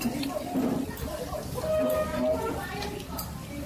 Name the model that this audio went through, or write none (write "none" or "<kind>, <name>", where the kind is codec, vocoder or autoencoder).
none